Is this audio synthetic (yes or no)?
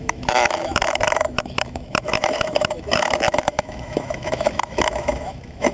yes